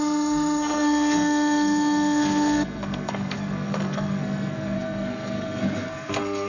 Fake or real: fake